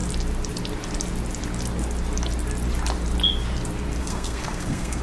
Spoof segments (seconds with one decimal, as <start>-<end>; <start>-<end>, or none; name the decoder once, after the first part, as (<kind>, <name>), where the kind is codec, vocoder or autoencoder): 4.0-5.0 (codec, SNAC)